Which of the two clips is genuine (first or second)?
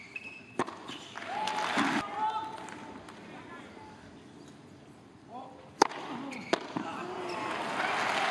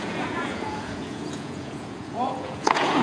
first